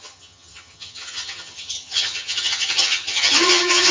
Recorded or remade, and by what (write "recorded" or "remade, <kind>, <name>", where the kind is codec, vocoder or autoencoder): remade, vocoder, HiFi-GAN